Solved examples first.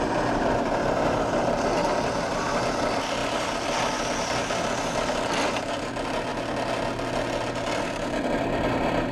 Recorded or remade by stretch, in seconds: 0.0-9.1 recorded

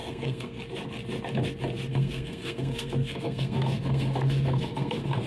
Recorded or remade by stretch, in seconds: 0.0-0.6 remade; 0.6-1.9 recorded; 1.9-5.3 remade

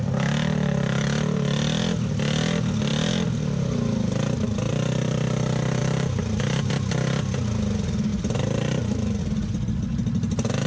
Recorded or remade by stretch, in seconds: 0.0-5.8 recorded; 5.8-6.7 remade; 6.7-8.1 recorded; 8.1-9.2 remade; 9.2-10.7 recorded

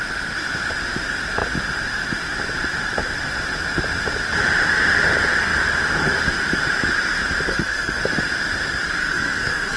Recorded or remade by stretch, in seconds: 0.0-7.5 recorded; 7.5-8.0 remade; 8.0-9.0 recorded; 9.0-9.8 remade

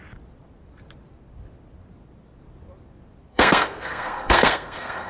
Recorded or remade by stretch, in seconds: 0.0-3.3 recorded; 3.3-5.1 remade

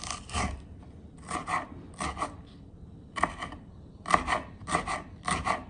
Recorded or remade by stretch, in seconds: 0.0-1.4 remade; 1.4-2.9 recorded; 2.9-5.7 remade